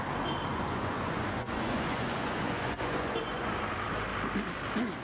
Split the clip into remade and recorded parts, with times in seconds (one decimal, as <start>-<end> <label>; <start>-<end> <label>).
0.0-0.5 recorded; 0.5-3.5 remade; 3.5-5.0 recorded